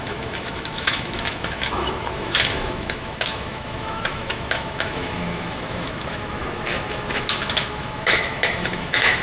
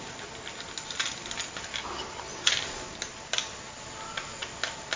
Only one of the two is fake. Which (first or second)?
first